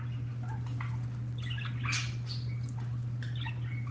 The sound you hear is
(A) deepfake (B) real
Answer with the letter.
B